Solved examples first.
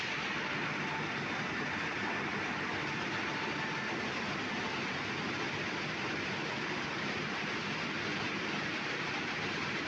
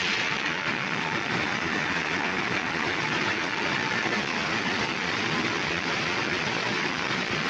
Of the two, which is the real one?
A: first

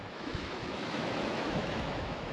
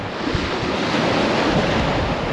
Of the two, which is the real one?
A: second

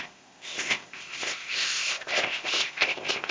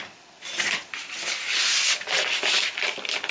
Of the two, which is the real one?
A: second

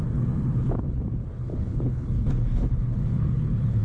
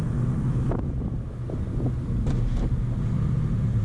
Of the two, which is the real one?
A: second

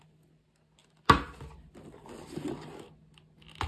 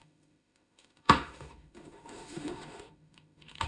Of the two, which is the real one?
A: first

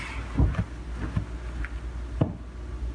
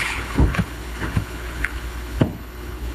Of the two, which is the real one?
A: first